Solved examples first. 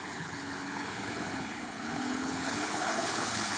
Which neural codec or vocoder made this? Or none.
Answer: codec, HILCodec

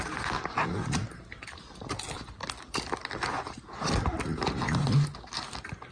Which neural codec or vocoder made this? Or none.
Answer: none